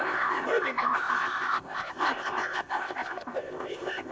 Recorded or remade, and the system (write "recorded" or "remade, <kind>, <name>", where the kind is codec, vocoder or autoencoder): remade, codec, ZipCodec